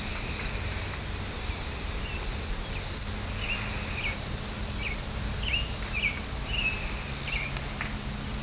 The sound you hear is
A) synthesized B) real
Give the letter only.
B